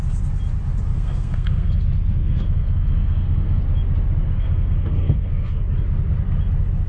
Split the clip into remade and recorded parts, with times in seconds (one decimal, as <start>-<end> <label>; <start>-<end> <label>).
0.0-0.9 recorded; 0.9-1.7 remade; 1.7-2.1 recorded; 2.1-3.6 remade; 3.6-4.2 recorded; 4.2-5.6 remade; 5.6-6.9 recorded